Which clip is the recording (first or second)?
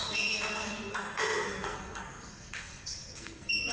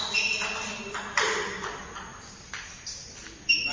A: second